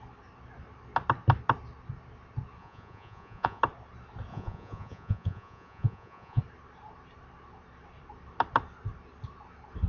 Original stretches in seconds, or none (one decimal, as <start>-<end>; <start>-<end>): 0.0-2.6; 3.6-4.3; 6.4-9.9